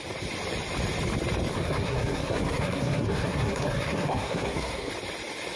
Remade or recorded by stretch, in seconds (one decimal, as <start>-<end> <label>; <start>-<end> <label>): 0.0-1.5 recorded; 1.5-4.9 remade; 4.9-5.6 recorded